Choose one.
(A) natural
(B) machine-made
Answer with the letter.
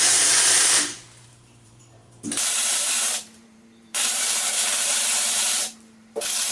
B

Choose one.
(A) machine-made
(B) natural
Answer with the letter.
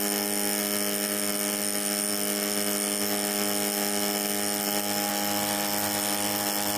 B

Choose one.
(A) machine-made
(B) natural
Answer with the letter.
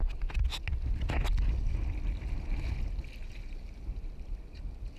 B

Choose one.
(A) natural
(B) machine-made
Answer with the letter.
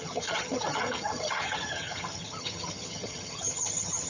B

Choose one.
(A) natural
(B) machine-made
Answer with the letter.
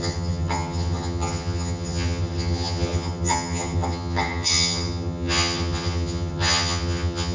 B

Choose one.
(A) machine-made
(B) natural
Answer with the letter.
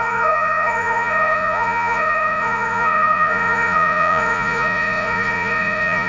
A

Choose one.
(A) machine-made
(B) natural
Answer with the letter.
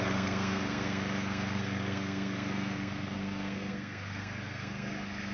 A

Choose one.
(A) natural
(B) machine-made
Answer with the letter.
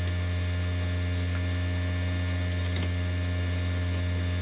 A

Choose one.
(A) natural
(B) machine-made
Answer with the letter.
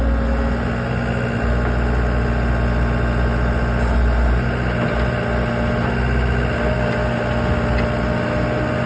A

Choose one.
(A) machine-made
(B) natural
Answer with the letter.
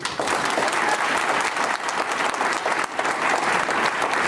B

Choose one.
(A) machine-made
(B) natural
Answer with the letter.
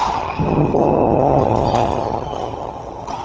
A